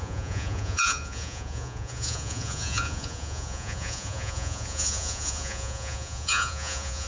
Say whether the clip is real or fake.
fake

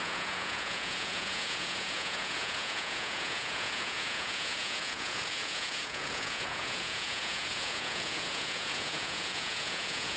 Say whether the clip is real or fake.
fake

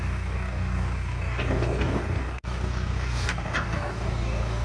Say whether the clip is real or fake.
fake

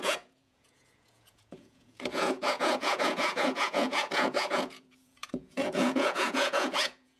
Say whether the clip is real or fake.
fake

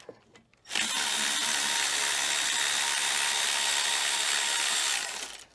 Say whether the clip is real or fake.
real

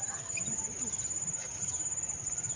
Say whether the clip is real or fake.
real